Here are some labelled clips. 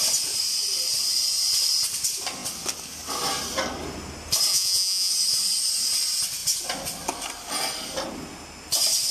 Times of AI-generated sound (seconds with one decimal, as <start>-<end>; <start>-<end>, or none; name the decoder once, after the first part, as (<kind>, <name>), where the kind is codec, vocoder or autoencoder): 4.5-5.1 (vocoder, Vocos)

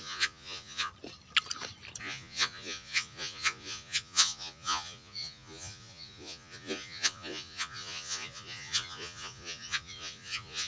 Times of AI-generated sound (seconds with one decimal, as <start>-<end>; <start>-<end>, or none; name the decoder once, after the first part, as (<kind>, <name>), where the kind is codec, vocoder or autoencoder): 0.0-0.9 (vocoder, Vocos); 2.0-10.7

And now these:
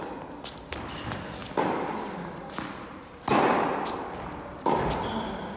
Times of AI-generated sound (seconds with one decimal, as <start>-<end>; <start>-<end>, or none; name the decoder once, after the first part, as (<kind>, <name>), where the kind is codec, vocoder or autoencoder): none

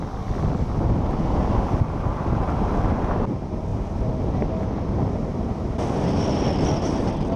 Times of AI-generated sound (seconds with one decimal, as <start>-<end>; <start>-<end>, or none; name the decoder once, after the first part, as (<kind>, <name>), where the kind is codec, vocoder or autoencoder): none

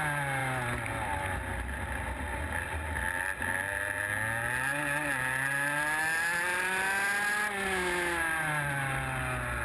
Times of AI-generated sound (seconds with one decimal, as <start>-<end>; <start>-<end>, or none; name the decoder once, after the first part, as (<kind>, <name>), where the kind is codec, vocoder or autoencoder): none

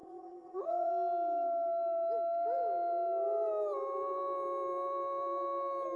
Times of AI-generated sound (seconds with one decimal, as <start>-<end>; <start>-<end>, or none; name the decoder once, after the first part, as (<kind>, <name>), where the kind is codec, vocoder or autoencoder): 0.0-0.9 (vocoder, Vocos)

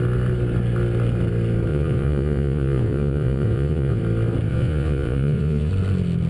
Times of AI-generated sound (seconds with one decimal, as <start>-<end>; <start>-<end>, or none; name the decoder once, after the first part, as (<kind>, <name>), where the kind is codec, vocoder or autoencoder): 1.7-4.0 (vocoder, Vocos); 4.5-5.7

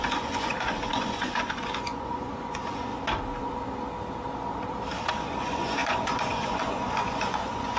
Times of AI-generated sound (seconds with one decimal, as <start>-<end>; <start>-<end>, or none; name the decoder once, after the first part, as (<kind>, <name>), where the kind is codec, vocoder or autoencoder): 0.0-2.9 (vocoder, Vocos); 5.1-7.8